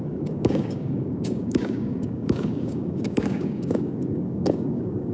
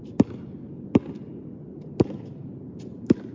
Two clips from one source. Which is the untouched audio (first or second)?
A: second